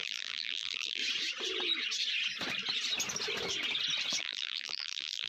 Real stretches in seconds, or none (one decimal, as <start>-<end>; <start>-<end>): 1.0-4.2